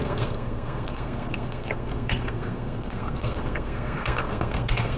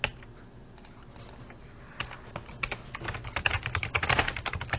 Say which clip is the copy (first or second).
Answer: first